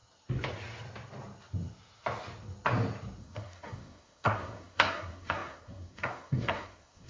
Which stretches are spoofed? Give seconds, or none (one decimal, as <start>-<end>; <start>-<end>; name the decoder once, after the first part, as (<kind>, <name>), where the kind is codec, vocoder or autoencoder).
3.2-7.1 (codec, SNAC)